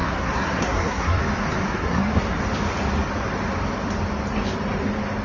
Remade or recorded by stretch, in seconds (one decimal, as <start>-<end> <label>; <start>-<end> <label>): 0.0-1.2 remade; 1.2-1.7 recorded; 1.7-2.4 remade; 2.4-5.2 recorded